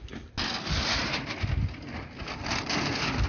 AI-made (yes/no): no